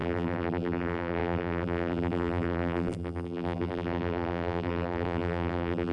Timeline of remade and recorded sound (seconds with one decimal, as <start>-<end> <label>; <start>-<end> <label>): 0.0-5.9 remade